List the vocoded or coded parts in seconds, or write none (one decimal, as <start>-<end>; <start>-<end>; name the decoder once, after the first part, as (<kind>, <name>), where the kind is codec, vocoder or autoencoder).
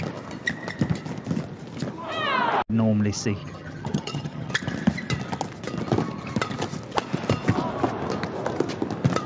3.4-4.5 (vocoder, HiFi-GAN)